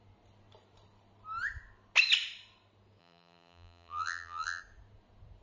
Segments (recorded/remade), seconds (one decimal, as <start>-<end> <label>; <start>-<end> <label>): 0.0-3.0 recorded; 3.0-4.6 remade; 4.6-5.4 recorded